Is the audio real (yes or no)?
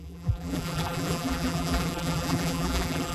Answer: no